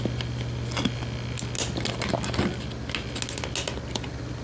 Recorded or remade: recorded